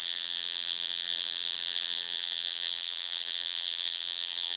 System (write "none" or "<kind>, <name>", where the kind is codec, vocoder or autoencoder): vocoder, BigVGAN v2